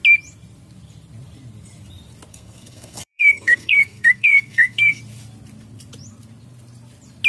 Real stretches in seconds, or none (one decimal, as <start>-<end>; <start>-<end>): 0.0-2.3; 5.0-7.3